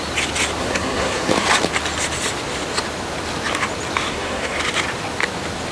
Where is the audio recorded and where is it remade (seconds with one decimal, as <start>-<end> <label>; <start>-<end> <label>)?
0.0-0.6 recorded; 0.6-1.3 remade; 1.3-4.1 recorded; 4.1-4.6 remade; 4.6-5.7 recorded